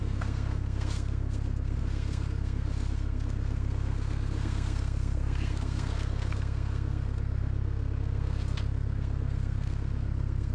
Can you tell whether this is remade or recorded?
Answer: remade